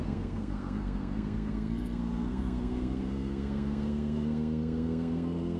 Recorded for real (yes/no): no